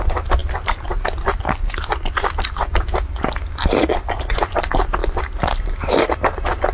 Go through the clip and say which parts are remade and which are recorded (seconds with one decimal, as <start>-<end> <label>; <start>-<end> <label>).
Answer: 0.0-5.0 remade; 5.0-6.1 recorded; 6.1-6.7 remade